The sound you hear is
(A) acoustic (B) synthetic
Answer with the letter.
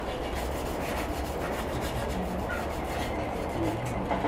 A